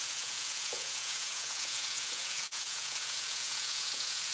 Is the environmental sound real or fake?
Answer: fake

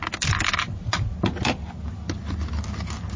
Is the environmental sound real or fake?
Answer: real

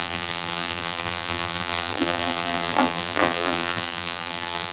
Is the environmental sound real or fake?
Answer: fake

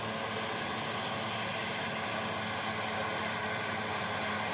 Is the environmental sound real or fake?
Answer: real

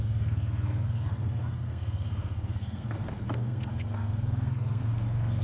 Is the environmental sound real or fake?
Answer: fake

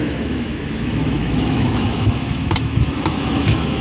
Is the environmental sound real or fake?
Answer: fake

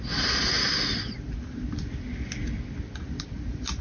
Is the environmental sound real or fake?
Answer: real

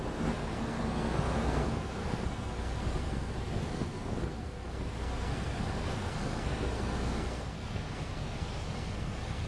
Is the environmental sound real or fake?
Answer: fake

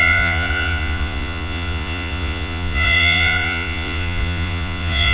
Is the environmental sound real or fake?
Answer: fake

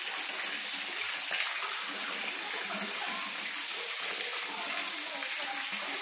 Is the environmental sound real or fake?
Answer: real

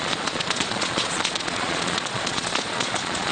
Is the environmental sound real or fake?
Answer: fake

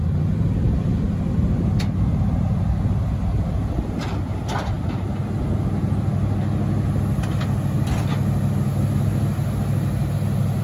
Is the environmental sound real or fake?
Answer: real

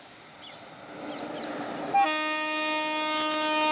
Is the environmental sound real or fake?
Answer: real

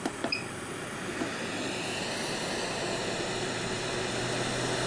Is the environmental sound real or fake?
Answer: real